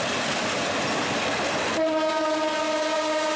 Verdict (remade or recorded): recorded